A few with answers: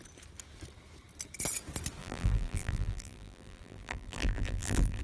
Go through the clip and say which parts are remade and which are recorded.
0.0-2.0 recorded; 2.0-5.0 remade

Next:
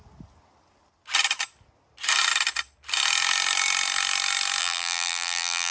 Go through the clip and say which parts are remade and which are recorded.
0.0-4.6 recorded; 4.6-5.7 remade

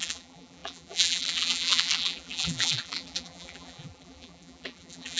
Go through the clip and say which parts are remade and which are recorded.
0.0-5.2 remade

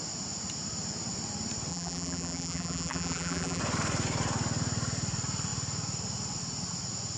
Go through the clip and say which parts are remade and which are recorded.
0.0-1.7 recorded; 1.7-3.6 remade; 3.6-7.2 recorded

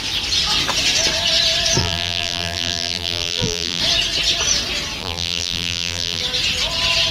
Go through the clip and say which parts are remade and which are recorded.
0.0-1.8 recorded; 1.8-3.8 remade; 3.8-5.0 recorded; 5.0-6.2 remade; 6.2-7.1 recorded